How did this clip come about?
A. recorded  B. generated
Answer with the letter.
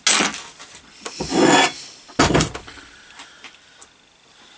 A